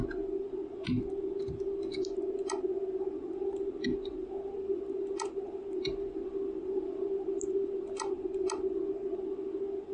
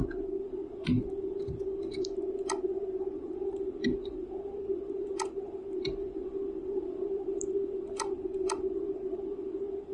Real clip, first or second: first